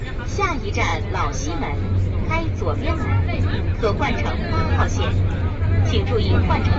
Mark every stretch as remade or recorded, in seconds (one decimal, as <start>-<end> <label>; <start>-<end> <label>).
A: 0.0-6.8 recorded